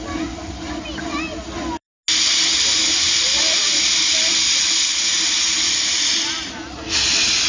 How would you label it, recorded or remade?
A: recorded